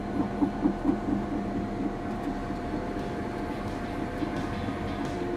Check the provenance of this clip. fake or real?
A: real